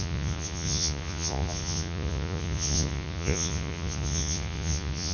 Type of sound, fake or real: fake